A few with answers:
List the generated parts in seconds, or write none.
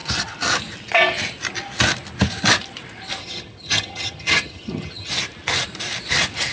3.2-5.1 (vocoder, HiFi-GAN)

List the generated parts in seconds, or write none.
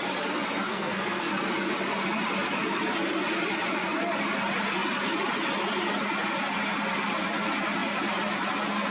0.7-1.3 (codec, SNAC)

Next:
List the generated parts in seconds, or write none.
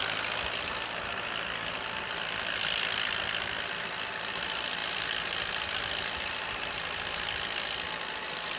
none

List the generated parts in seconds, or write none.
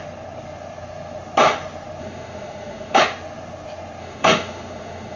2.0-3.0 (autoencoder, DAC-VAE); 4.0-5.2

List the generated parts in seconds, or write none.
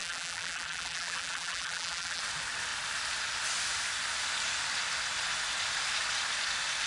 0.0-2.2 (vocoder, BigVGAN v2)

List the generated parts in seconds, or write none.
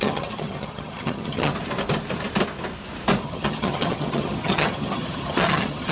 0.0-1.5 (vocoder, HiFi-GAN); 3.2-5.9